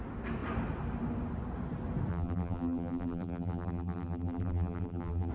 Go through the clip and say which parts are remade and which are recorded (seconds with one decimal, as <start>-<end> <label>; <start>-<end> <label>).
0.0-2.1 recorded; 2.1-5.3 remade